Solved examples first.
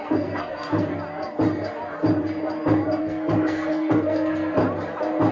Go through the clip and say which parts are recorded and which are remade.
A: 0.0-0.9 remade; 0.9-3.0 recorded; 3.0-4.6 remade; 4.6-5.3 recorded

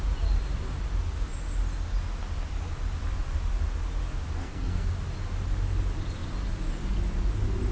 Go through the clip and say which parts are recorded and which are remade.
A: 0.0-4.4 recorded; 4.4-4.9 remade; 4.9-7.7 recorded